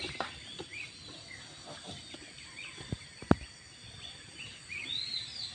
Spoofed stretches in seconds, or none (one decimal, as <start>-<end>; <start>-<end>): none